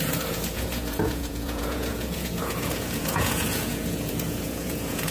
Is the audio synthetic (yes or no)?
yes